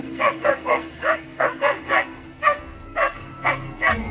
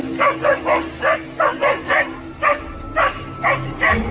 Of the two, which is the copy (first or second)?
first